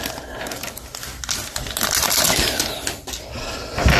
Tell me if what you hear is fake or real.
real